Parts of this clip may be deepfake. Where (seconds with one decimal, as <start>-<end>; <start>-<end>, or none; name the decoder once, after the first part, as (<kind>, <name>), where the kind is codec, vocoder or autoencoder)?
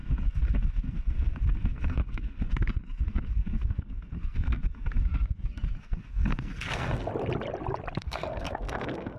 0.0-7.1 (codec, SNAC); 8.0-9.2